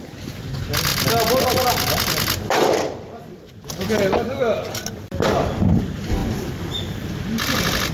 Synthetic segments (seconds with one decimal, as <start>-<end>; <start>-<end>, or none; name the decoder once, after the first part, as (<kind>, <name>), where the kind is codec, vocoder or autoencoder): none